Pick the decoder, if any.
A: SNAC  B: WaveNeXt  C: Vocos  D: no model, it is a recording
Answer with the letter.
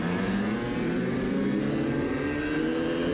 D